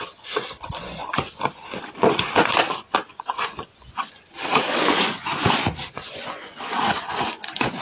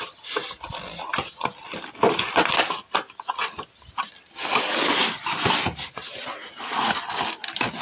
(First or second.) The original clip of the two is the second